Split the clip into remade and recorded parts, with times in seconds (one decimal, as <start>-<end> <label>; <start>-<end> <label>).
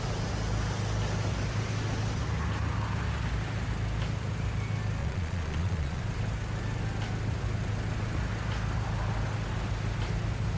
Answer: 0.0-5.0 recorded; 5.0-6.0 remade; 6.0-10.6 recorded